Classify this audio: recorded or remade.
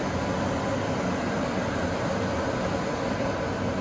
remade